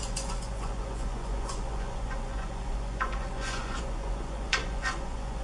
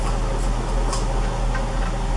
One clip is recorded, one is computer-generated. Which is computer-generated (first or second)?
first